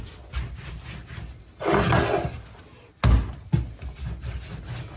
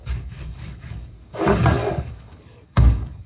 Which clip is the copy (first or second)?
second